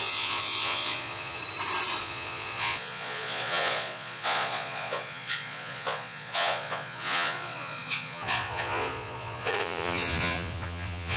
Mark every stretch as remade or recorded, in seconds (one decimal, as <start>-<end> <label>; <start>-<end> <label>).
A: 0.0-1.4 remade; 1.4-2.0 recorded; 2.0-11.2 remade